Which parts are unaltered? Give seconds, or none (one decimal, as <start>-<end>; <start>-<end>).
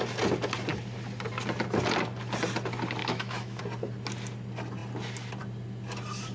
0.0-3.0; 3.6-6.3